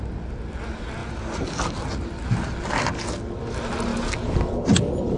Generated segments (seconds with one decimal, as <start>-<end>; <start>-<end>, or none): none

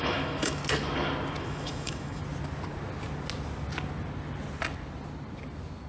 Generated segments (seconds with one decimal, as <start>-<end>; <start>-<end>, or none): 0.0-0.6; 1.4-2.2

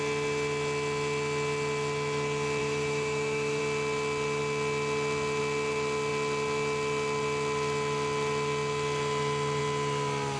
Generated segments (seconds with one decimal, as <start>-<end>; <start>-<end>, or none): 2.6-3.6

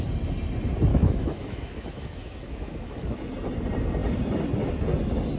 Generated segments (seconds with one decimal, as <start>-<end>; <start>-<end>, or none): 0.9-3.3

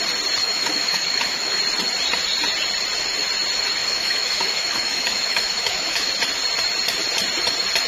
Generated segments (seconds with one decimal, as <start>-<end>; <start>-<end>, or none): 0.4-1.6; 3.8-6.1

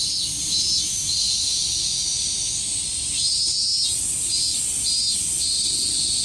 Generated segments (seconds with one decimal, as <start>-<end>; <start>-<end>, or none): 0.9-2.8

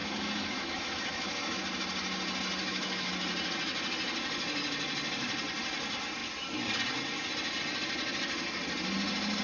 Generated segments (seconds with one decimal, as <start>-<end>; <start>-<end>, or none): 0.0-1.6; 2.6-3.1